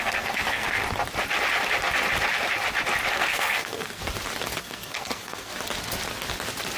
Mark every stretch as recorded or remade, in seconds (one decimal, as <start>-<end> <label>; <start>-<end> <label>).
0.0-0.8 remade; 0.8-3.1 recorded; 3.1-4.0 remade; 4.0-4.6 recorded; 4.6-5.5 remade; 5.5-6.8 recorded